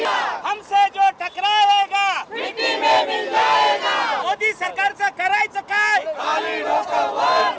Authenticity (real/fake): real